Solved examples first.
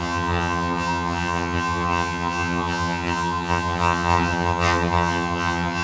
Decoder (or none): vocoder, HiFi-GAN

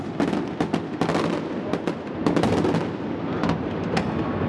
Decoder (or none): none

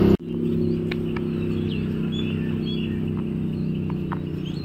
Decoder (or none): none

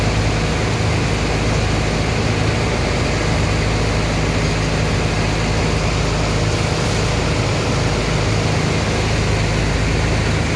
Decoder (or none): none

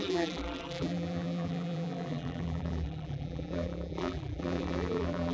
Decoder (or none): vocoder, BigVGAN v2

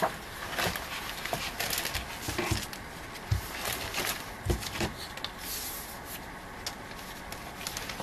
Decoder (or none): none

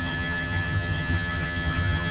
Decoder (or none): vocoder, HiFi-GAN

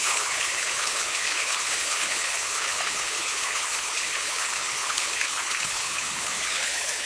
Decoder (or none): codec, HILCodec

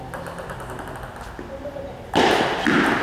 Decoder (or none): none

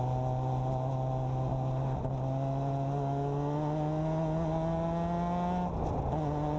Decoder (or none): none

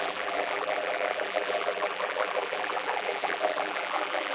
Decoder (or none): vocoder, BigVGAN v2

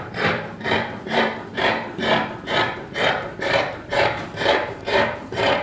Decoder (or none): vocoder, BigVGAN v2